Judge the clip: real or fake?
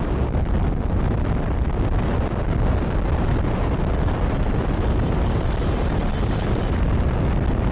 real